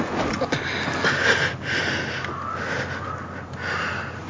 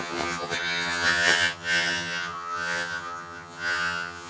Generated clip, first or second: second